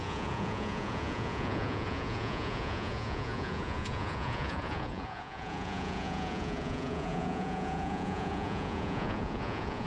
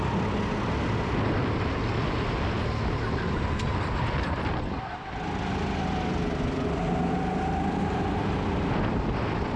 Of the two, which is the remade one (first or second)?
first